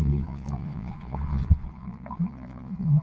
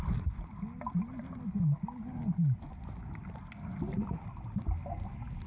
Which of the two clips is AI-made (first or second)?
first